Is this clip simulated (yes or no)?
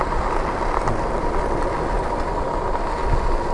no